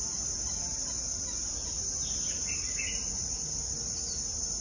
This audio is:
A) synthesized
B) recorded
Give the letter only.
B